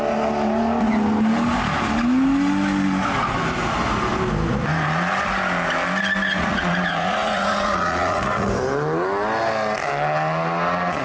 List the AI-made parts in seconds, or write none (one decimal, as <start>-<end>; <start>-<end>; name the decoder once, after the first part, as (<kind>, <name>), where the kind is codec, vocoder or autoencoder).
6.3-8.5 (vocoder, Vocos)